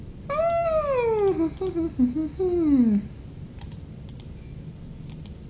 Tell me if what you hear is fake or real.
real